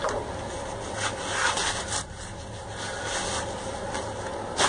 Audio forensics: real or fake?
real